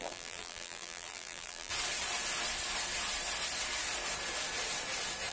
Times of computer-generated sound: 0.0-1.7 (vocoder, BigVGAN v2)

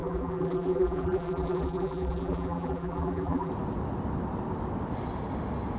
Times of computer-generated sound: 0.0-3.5 (vocoder, BigVGAN v2)

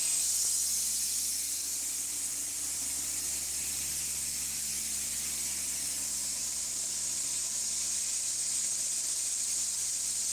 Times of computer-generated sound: 6.1-10.3 (vocoder, BigVGAN v2)

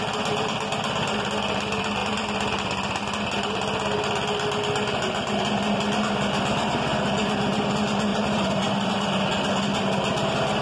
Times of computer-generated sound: 8.1-8.9 (vocoder, BigVGAN v2)

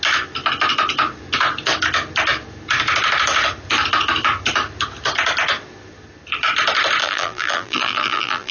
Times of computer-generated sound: 7.0-8.5 (vocoder, BigVGAN v2)

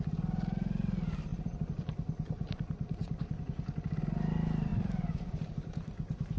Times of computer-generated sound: 1.3-3.4 (vocoder, BigVGAN v2); 4.7-6.4

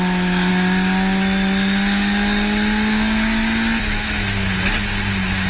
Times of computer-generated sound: none